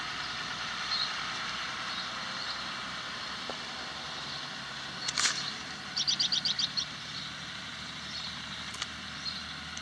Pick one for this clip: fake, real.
fake